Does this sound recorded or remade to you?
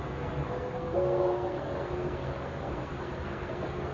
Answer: remade